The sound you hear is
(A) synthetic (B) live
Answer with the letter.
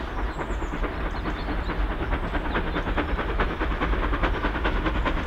B